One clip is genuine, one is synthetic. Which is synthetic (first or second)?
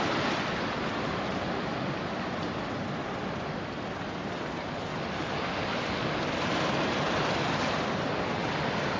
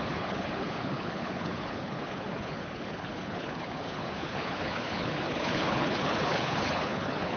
second